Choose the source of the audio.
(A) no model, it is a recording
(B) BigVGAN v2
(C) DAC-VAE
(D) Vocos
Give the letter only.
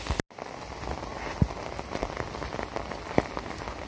A